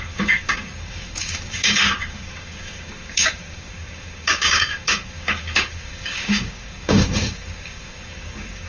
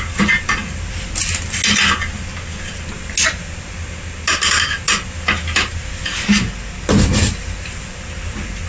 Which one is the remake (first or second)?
first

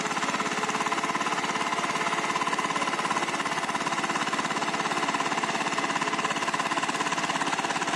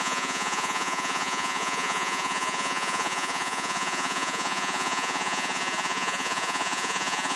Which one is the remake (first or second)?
second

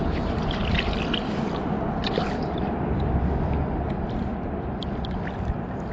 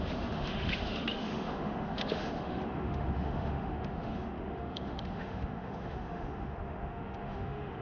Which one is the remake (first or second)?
second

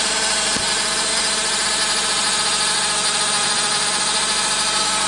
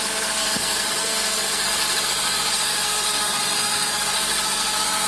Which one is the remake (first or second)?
second